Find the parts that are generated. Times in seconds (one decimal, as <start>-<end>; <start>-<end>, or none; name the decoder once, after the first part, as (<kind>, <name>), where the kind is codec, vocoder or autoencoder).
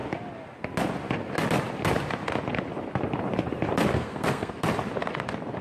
3.9-4.6 (codec, SNAC)